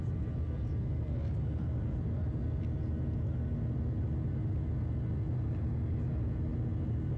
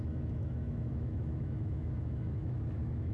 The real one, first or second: first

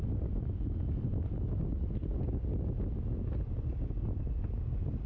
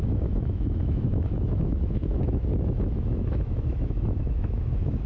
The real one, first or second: first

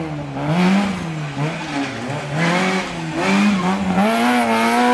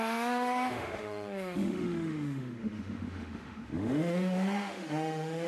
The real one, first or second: first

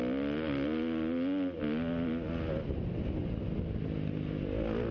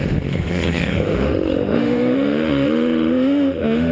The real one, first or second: first